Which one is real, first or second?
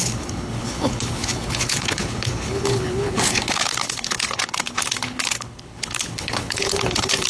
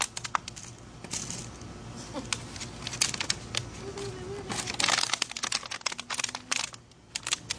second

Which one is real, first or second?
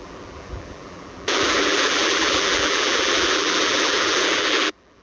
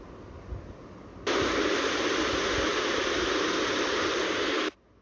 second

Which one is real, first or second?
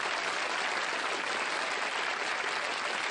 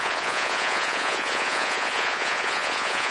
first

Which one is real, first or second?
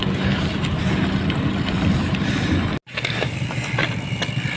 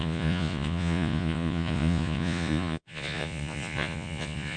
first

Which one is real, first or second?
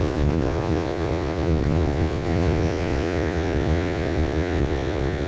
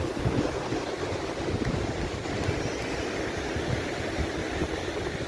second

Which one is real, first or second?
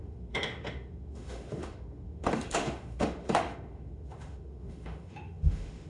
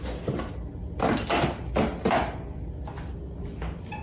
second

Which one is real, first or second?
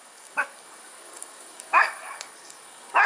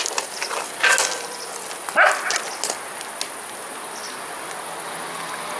second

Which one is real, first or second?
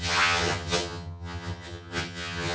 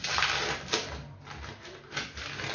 second